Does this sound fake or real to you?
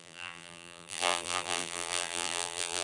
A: fake